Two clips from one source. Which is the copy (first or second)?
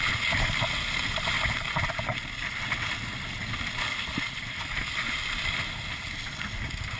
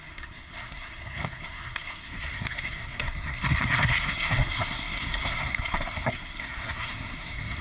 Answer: second